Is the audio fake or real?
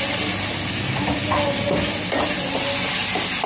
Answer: real